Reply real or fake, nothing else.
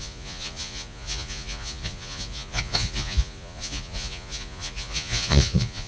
fake